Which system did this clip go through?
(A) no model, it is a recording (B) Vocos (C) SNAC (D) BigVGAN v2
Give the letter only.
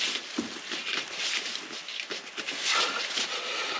A